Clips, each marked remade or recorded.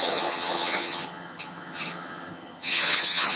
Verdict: remade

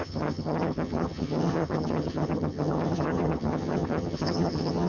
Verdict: remade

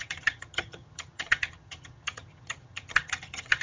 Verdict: remade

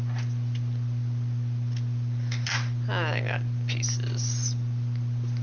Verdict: recorded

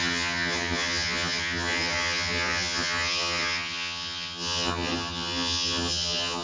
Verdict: remade